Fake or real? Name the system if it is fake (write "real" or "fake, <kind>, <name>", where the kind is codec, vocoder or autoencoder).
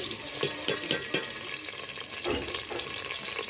real